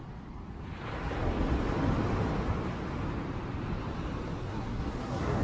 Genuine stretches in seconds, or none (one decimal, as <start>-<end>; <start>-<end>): 0.0-4.5